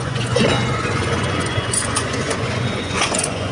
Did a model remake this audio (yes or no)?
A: yes